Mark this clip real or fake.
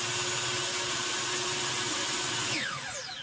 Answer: real